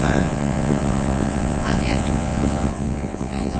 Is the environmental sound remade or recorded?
remade